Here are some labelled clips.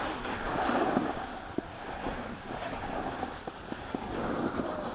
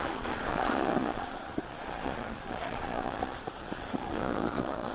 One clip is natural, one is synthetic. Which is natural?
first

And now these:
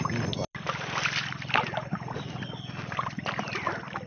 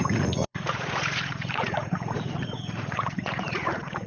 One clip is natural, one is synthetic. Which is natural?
first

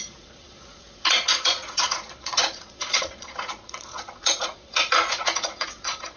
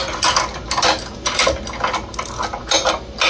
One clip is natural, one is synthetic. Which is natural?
second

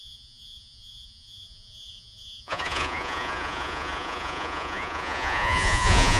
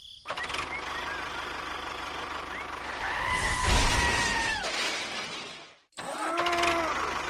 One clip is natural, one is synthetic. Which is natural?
second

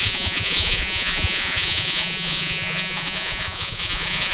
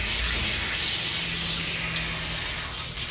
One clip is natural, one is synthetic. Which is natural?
second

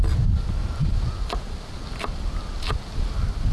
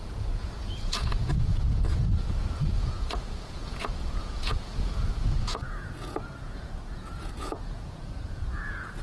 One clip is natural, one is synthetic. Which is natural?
first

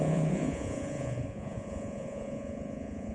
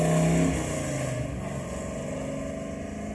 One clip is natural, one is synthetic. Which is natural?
second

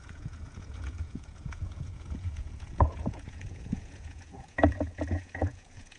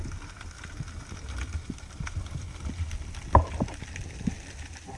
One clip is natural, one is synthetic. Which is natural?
second